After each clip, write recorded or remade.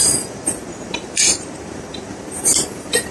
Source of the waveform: remade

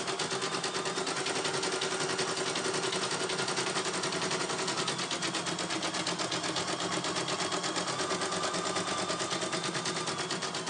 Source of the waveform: recorded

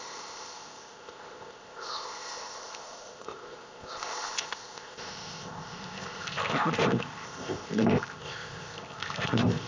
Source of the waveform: remade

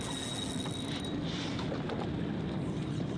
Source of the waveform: recorded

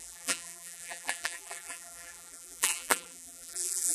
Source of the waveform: remade